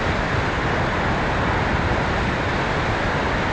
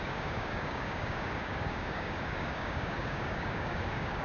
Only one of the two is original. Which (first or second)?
first